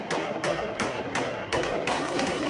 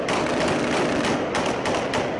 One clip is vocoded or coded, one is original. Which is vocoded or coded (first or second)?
first